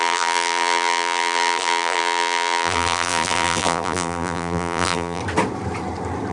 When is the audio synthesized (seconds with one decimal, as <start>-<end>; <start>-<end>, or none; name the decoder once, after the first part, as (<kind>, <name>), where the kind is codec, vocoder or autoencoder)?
0.0-5.2 (vocoder, BigVGAN v2)